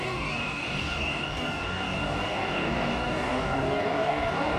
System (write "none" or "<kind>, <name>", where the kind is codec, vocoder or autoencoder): codec, DAC